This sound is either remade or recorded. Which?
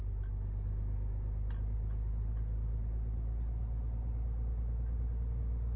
recorded